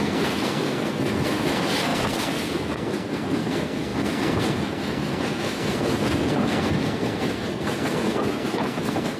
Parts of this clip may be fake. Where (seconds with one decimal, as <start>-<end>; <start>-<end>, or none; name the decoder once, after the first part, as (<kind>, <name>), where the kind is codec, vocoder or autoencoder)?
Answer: 0.0-9.2 (codec, SNAC)